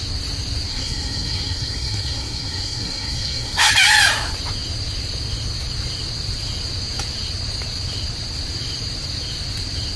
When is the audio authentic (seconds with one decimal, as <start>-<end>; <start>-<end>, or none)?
0.0-0.7; 3.7-10.0